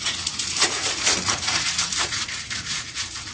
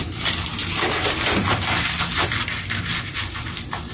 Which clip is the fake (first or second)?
first